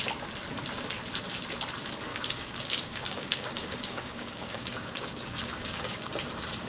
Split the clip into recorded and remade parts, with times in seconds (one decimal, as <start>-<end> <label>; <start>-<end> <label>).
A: 0.0-2.1 recorded; 2.1-6.1 remade; 6.1-6.7 recorded